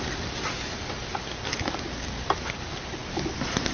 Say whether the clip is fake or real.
real